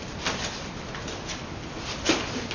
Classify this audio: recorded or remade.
recorded